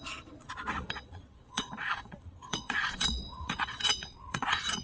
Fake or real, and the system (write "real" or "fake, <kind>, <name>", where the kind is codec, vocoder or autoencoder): fake, vocoder, Vocos